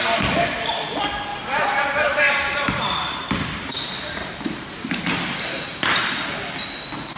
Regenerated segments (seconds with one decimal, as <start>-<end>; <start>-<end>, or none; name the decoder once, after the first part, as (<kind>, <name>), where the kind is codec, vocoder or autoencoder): 1.3-2.2 (vocoder, BigVGAN v2); 3.7-5.1; 5.7-6.2